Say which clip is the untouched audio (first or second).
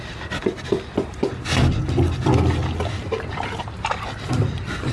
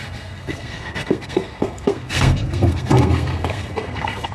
first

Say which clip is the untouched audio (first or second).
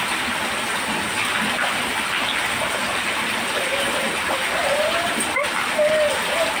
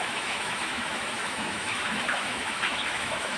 first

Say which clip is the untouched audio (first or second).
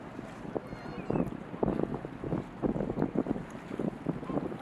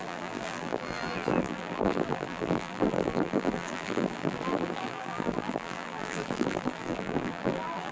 first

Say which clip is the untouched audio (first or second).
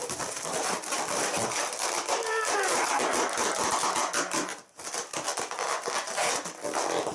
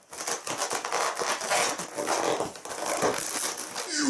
second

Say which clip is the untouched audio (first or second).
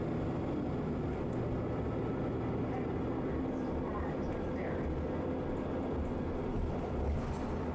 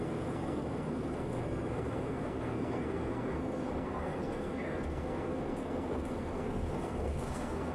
first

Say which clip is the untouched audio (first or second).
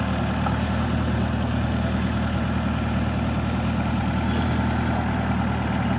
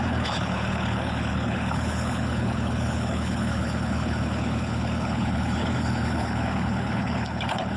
first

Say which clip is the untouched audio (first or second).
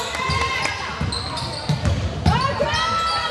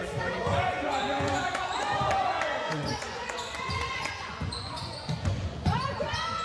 first